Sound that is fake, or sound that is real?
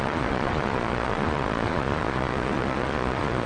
fake